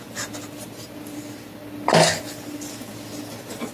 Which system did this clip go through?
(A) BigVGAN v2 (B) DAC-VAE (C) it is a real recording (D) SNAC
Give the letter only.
C